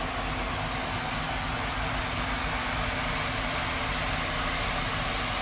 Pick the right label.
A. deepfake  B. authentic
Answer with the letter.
B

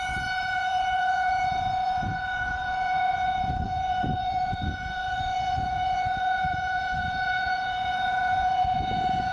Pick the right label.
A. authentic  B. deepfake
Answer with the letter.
B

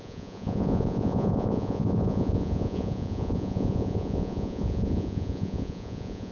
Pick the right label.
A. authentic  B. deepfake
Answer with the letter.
B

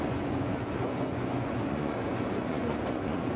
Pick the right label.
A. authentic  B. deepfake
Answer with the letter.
B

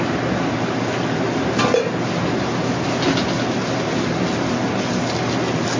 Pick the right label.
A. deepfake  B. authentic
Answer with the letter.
B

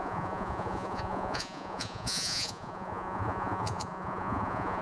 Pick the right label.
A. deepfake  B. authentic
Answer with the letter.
A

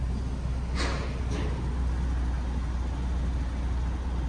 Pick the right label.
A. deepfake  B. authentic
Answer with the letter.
B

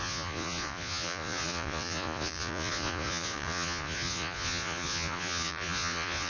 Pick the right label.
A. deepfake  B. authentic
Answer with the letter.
A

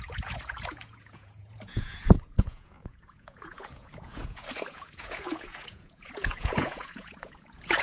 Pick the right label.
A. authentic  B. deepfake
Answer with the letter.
B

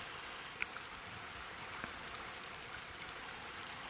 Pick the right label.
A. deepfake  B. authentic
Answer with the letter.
B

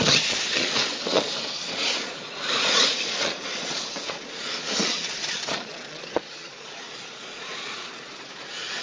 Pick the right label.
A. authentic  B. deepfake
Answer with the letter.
B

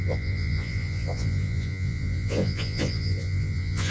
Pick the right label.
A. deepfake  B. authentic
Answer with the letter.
A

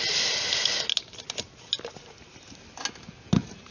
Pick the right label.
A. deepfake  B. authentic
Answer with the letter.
B